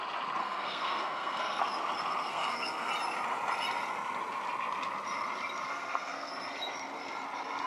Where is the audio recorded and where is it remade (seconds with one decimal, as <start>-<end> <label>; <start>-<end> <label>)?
0.0-0.4 recorded; 0.4-1.6 remade; 1.6-2.3 recorded; 2.3-2.9 remade; 2.9-5.7 recorded; 5.7-6.3 remade; 6.3-7.7 recorded